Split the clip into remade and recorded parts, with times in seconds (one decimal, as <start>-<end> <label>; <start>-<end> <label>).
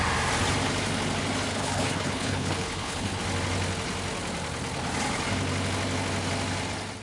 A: 0.0-1.5 recorded; 1.5-3.2 remade; 3.2-7.0 recorded